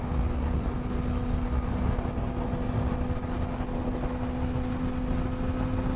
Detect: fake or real real